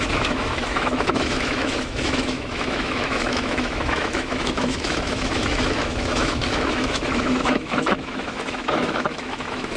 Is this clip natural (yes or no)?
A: no